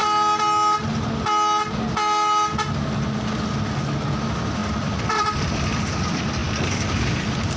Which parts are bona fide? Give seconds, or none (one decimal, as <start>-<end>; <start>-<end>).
0.0-4.6; 5.9-6.4